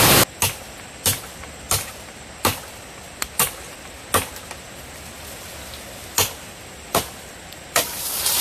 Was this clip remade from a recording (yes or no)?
no